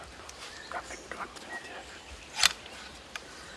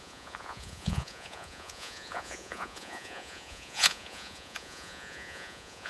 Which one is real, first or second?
first